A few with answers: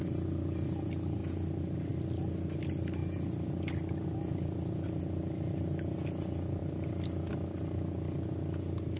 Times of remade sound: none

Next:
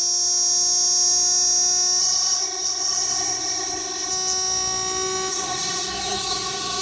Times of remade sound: 2.0-4.1 (codec, SNAC); 5.3-6.8

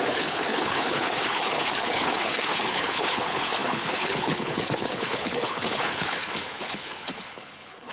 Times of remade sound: 0.0-7.9 (codec, HILCodec)

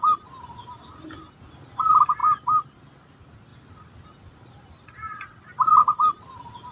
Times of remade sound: none